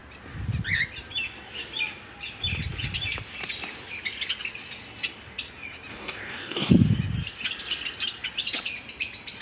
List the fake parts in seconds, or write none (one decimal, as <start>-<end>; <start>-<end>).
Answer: 5.9-6.7